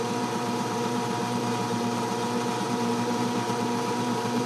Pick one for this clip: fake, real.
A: fake